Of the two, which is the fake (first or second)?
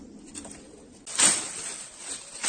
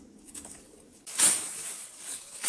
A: second